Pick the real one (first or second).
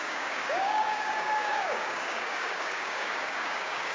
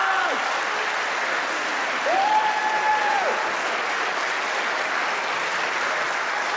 second